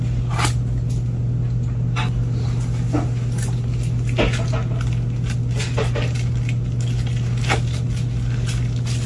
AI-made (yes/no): no